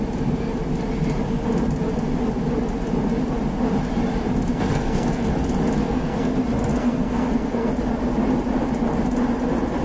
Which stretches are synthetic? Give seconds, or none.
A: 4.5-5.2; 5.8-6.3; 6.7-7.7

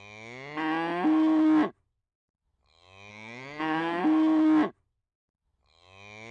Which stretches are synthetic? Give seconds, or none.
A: 3.1-4.0

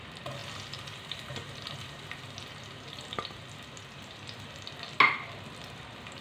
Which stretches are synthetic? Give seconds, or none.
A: none